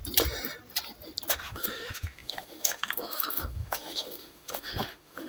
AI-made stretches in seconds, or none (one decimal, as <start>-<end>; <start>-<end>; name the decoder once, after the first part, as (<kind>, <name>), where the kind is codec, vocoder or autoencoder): 1.3-5.3 (autoencoder, DAC-VAE)